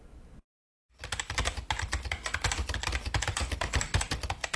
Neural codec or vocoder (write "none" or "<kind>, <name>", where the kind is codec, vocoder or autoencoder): none